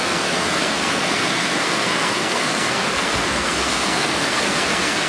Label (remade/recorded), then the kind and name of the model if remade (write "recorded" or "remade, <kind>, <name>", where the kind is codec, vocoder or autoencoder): remade, codec, SNAC